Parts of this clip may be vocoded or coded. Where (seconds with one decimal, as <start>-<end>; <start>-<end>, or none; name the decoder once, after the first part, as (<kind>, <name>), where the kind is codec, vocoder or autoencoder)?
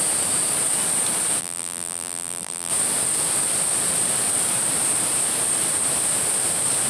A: 1.4-2.7 (vocoder, BigVGAN v2)